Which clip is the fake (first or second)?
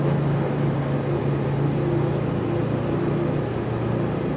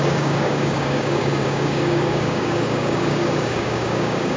second